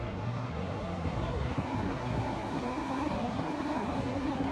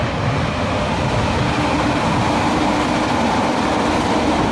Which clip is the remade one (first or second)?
first